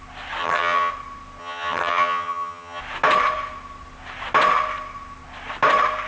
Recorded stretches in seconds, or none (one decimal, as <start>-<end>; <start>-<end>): 0.0-0.4; 0.9-1.4; 2.8-6.1